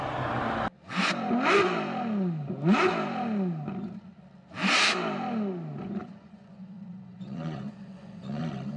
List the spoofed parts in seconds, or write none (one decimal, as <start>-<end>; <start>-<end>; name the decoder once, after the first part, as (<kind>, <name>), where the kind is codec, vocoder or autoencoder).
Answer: 6.0-8.4 (vocoder, Vocos)